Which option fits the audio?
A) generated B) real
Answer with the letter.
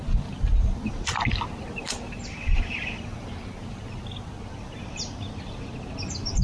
B